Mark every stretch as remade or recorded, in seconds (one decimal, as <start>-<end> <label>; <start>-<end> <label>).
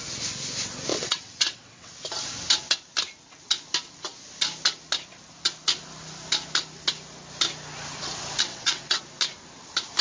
0.0-0.9 recorded; 0.9-1.9 remade; 1.9-8.5 recorded; 8.5-9.0 remade; 9.0-10.0 recorded